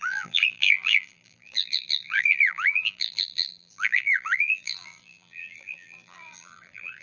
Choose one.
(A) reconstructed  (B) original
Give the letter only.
A